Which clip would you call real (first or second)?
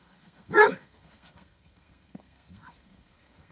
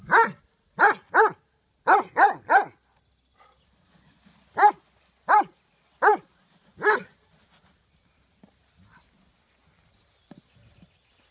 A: second